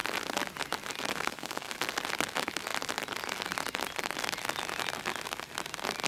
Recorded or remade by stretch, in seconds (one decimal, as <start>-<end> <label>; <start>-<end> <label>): 0.0-1.1 recorded; 1.1-1.7 remade; 1.7-6.1 recorded